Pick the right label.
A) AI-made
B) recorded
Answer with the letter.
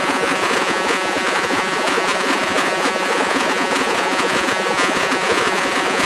A